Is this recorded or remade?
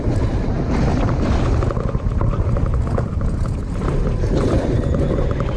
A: recorded